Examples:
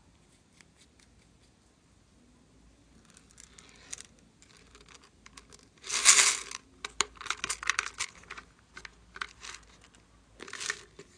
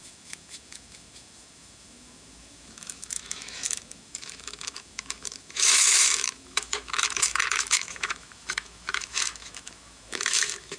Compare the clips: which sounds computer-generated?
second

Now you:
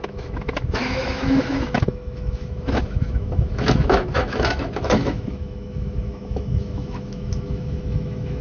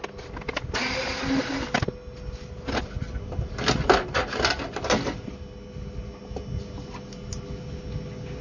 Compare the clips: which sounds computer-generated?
first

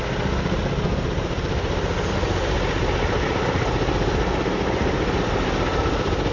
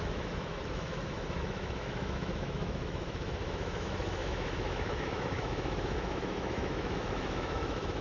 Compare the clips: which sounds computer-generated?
second